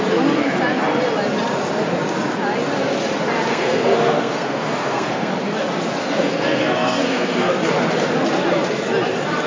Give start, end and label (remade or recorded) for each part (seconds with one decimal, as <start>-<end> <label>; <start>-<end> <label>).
0.0-3.5 recorded; 3.5-5.3 remade; 5.3-6.0 recorded; 6.0-7.5 remade; 7.5-9.5 recorded